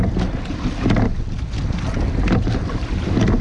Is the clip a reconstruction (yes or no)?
no